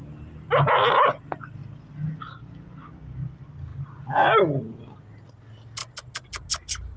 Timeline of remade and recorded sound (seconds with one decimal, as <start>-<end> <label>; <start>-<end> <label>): 0.0-7.0 recorded